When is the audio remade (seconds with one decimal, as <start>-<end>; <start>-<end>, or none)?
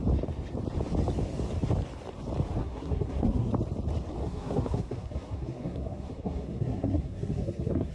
2.6-3.5; 4.2-7.9